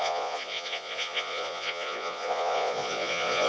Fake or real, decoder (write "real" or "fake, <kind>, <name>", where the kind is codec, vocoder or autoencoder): fake, vocoder, Vocos